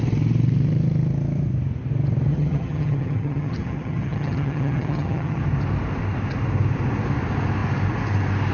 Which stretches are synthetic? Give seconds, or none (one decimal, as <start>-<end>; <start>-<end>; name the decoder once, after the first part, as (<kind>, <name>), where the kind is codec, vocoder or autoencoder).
2.3-5.4 (vocoder, HiFi-GAN)